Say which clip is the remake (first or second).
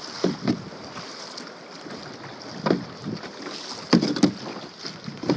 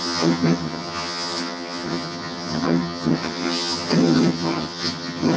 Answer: second